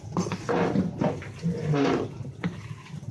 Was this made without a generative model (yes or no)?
yes